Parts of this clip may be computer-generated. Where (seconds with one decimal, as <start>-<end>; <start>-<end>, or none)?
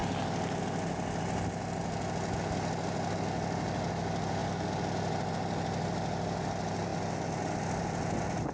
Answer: none